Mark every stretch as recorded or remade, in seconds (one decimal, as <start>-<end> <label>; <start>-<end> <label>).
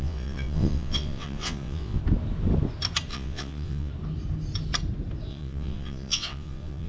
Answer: 0.0-2.0 remade; 2.0-3.1 recorded; 3.1-3.9 remade; 3.9-5.3 recorded; 5.3-6.9 remade